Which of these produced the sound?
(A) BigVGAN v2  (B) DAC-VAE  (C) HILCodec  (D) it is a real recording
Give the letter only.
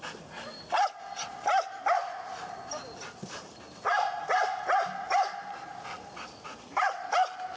A